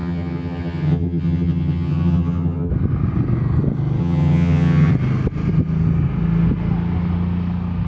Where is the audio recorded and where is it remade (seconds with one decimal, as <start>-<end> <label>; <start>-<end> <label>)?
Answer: 0.0-2.7 remade; 2.7-4.0 recorded; 4.0-4.9 remade; 4.9-7.9 recorded

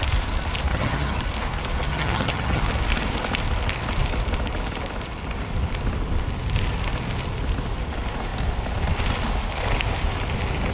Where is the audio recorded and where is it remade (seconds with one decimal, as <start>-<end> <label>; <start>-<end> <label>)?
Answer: 0.0-0.7 recorded; 0.7-1.2 remade; 1.2-1.9 recorded; 1.9-2.6 remade; 2.6-10.7 recorded